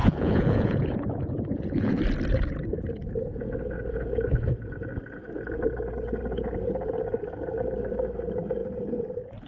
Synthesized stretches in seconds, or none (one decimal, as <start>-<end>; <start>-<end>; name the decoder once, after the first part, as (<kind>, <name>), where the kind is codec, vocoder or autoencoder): 0.0-2.0 (vocoder, Vocos)